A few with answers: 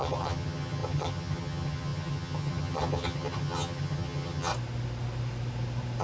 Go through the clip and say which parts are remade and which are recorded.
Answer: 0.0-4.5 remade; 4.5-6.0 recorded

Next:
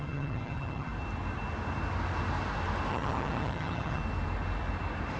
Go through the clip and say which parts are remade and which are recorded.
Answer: 0.0-0.9 remade; 0.9-2.9 recorded; 2.9-4.0 remade; 4.0-5.2 recorded

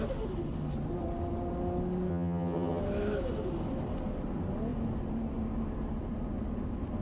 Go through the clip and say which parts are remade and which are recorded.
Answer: 0.0-2.1 recorded; 2.1-2.8 remade; 2.8-7.0 recorded